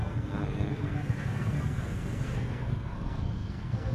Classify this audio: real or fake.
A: fake